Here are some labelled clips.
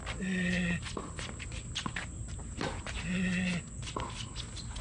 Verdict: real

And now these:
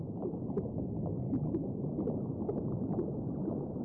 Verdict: real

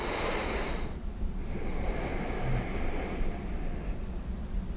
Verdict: real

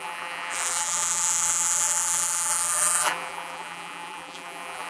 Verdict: fake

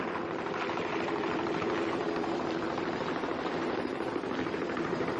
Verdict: fake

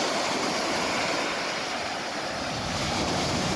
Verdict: fake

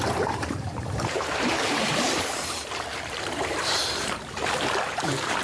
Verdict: fake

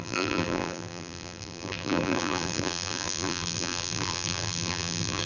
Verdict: fake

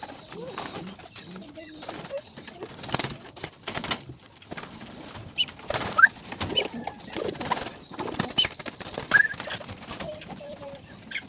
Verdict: fake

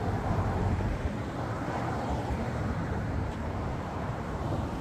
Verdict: fake